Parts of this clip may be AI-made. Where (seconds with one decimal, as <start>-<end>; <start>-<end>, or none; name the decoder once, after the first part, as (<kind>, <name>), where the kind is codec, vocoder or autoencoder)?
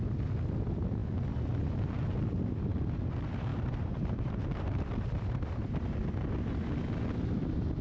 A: 3.5-5.9 (vocoder, BigVGAN v2)